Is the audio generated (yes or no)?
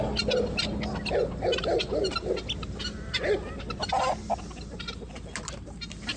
no